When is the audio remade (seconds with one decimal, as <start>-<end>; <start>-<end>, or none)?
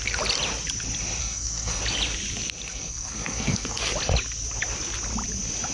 1.2-1.8; 2.7-3.8